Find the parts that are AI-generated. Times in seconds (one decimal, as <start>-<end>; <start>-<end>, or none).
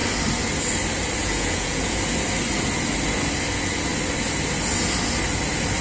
1.2-2.0